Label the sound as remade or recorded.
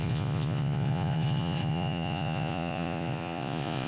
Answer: remade